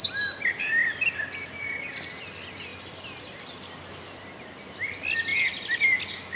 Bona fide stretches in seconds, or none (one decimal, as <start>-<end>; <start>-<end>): 0.0-0.8; 2.0-5.3; 6.0-6.4